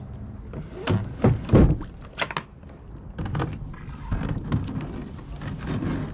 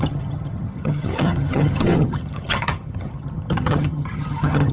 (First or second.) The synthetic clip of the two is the second